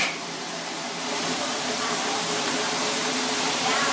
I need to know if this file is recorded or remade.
remade